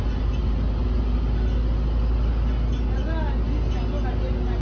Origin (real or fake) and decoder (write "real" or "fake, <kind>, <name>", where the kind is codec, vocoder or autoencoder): real